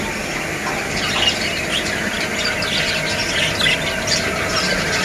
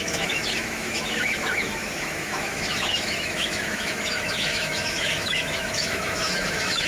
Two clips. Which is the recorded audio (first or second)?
first